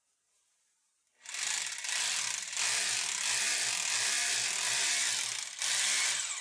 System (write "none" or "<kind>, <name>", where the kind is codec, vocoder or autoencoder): none